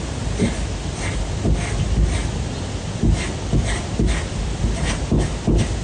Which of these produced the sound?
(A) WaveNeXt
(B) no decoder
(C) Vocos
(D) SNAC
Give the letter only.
B